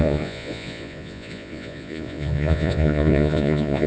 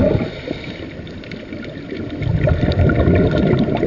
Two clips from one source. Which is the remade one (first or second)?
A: first